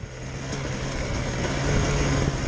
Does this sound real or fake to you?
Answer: real